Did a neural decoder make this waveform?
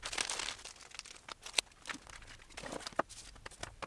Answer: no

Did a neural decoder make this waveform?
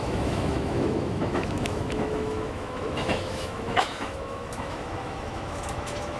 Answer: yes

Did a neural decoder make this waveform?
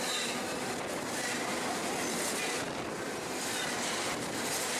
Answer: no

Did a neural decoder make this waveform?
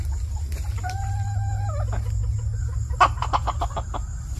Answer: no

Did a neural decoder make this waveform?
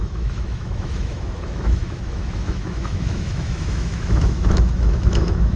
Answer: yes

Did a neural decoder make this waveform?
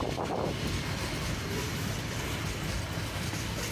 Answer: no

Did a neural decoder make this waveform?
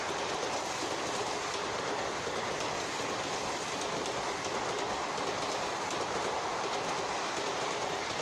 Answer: no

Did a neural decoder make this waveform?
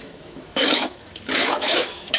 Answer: yes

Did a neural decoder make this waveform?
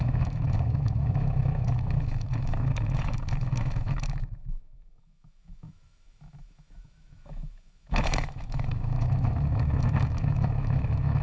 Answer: yes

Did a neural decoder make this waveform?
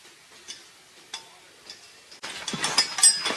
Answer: no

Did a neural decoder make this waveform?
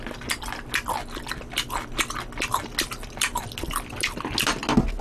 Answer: no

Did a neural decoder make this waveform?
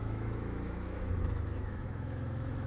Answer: yes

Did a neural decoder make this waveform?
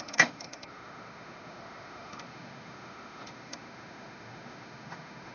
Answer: yes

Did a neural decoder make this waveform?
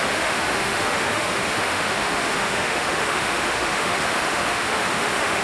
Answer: yes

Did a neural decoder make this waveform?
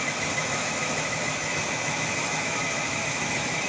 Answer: yes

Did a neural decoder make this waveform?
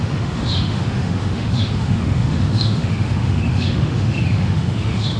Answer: yes